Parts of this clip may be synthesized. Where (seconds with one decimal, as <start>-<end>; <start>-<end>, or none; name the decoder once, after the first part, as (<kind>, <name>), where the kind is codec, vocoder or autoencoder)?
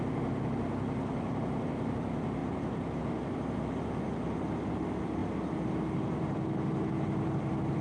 2.4-3.0 (vocoder, BigVGAN v2)